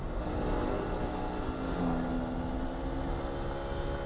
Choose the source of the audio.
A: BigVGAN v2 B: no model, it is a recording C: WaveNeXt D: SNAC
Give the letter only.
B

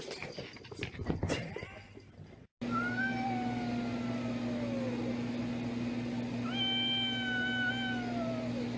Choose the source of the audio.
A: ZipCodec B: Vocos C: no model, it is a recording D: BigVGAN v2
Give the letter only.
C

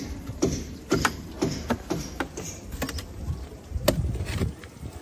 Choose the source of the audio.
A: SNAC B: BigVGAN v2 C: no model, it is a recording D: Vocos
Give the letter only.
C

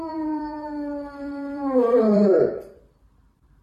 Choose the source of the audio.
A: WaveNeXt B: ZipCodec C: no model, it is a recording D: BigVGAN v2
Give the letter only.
D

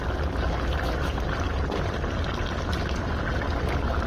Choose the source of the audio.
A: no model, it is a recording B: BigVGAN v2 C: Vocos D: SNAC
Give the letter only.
A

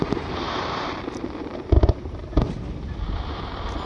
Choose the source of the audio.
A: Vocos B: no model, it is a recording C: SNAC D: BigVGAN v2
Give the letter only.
D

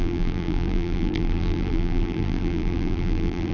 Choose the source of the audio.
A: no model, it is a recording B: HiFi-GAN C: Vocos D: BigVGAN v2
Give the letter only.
D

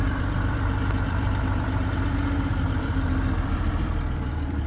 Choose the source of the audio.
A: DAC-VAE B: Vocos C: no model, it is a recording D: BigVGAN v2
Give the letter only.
D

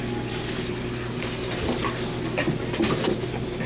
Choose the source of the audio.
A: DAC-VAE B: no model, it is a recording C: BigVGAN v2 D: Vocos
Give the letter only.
B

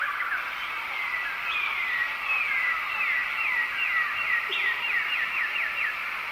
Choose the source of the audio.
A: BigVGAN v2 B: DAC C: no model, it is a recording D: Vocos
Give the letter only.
A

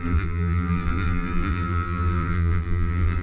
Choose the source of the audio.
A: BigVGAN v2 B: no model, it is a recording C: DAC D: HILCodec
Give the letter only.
A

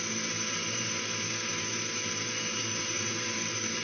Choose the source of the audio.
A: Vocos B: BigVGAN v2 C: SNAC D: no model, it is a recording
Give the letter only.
B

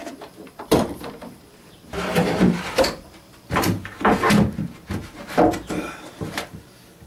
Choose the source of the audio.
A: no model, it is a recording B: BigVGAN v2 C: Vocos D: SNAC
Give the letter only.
B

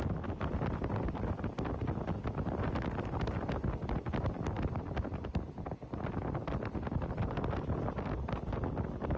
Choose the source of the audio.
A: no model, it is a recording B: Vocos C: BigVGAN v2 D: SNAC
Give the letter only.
A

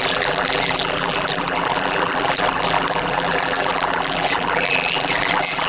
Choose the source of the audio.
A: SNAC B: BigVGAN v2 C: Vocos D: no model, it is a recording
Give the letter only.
B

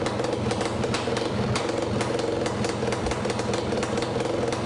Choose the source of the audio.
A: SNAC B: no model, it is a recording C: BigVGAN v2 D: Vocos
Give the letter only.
C